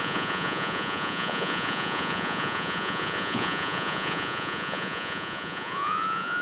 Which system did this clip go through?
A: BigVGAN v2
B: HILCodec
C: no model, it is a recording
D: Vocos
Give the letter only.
D